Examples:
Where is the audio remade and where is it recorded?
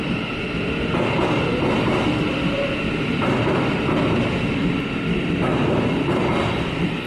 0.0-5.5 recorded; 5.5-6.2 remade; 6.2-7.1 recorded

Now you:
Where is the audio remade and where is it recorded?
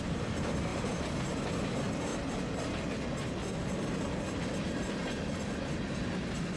0.0-0.7 recorded; 0.7-1.4 remade; 1.4-6.6 recorded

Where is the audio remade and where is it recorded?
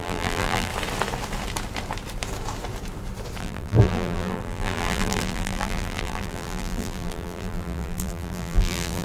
0.0-0.7 remade; 0.7-3.4 recorded; 3.4-9.0 remade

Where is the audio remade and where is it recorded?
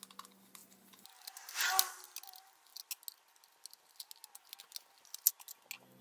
0.0-6.0 recorded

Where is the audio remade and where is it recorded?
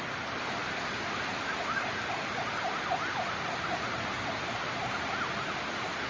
0.0-6.1 recorded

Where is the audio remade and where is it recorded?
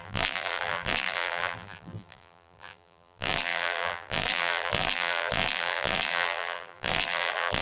0.0-7.6 remade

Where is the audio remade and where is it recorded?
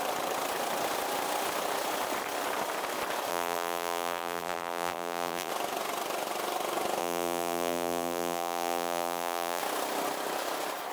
0.0-3.3 recorded; 3.3-5.5 remade; 5.5-7.0 recorded; 7.0-9.6 remade; 9.6-10.9 recorded